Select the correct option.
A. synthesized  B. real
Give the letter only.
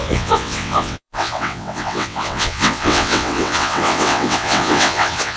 A